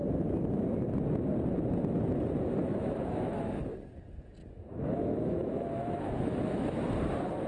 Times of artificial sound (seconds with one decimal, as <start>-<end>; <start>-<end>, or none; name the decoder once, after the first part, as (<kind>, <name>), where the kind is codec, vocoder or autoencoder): 2.6-3.6 (autoencoder, DAC-VAE); 4.4-6.8